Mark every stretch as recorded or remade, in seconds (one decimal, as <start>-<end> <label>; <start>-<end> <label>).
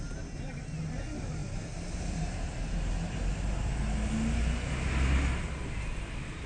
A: 0.0-6.5 recorded